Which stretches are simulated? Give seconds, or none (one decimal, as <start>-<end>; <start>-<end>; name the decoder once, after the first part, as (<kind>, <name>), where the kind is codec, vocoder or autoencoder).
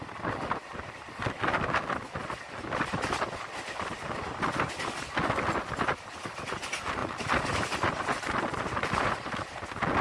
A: 7.0-7.9 (vocoder, BigVGAN v2)